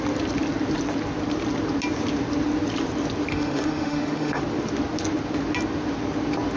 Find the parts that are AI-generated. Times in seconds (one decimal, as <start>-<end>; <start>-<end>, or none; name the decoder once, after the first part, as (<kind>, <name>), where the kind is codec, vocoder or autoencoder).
3.3-4.4 (autoencoder, DAC-VAE)